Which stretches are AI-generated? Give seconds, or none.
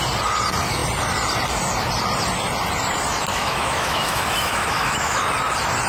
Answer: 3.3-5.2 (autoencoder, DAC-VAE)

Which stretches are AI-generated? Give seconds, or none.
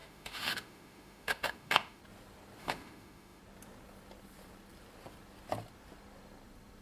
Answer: 0.0-2.0 (autoencoder, DAC-VAE); 2.6-3.4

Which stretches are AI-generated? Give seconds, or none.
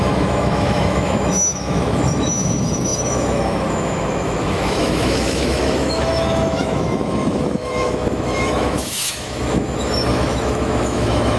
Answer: 0.0-11.4 (autoencoder, DAC-VAE)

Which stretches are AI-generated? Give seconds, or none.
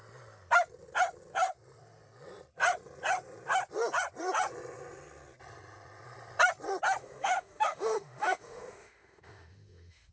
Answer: 7.0-10.1 (autoencoder, DAC-VAE)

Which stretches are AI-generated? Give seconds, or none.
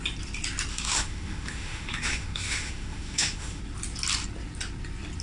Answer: 0.7-3.6 (autoencoder, DAC-VAE)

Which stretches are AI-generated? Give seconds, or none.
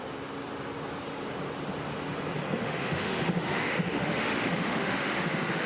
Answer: 2.6-5.7 (autoencoder, DAC-VAE)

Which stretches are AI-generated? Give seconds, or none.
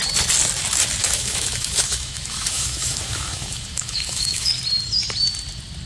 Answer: 1.0-4.5 (autoencoder, DAC-VAE)